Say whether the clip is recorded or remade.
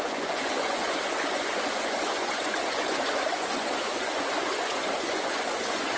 remade